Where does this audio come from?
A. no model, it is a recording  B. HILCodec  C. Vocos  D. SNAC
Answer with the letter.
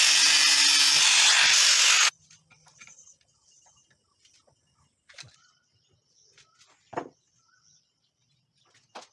A